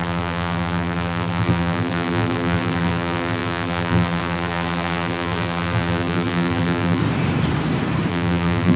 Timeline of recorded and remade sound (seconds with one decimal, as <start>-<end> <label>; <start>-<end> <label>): 0.0-7.0 remade; 7.0-8.1 recorded; 8.1-8.8 remade